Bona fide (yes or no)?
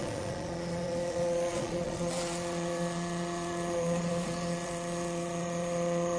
no